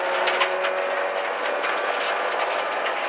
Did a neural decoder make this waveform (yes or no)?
no